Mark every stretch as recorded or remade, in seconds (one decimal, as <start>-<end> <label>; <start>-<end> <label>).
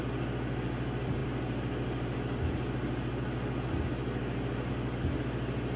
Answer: 0.0-5.8 recorded